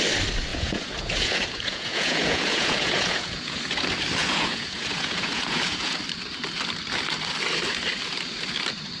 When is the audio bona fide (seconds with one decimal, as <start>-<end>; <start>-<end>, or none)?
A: 0.0-0.5; 3.6-4.2; 6.0-9.0